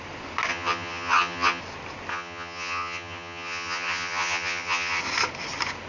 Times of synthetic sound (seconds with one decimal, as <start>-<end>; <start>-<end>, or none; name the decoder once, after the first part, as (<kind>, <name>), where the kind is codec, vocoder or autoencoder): 0.5-1.6 (vocoder, HiFi-GAN); 2.1-5.0